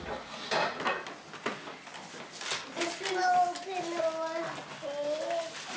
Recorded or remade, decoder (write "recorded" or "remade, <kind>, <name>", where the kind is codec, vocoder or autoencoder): recorded